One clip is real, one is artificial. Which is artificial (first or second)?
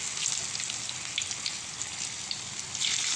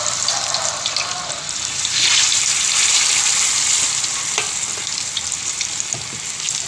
second